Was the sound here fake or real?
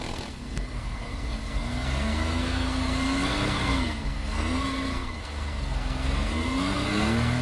fake